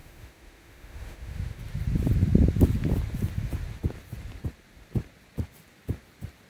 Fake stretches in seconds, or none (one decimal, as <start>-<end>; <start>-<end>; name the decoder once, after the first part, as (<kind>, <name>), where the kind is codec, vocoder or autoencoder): 0.0-1.6 (autoencoder, DAC-VAE)